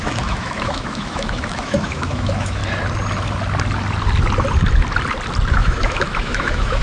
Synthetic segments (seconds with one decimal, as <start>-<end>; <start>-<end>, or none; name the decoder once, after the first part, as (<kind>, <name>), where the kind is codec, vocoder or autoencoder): 0.0-2.6 (autoencoder, DAC-VAE); 5.5-6.8